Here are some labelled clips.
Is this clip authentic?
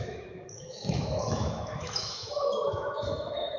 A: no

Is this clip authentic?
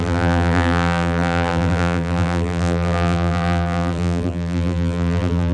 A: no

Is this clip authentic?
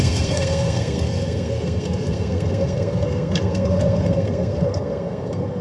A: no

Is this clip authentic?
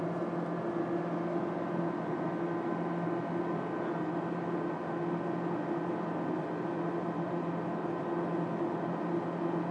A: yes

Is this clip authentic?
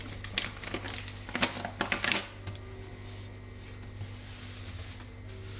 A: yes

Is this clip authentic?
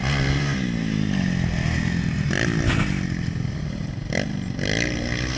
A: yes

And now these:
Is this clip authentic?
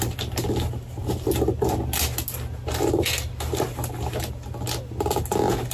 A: yes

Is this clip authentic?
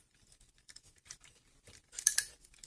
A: no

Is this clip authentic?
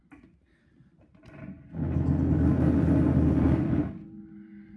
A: yes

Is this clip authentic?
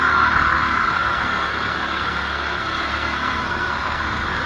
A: no